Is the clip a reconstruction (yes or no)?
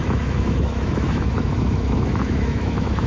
yes